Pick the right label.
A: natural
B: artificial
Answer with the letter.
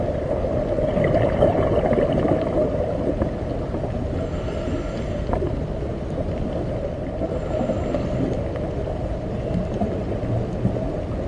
A